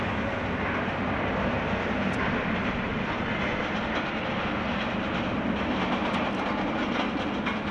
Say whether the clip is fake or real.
real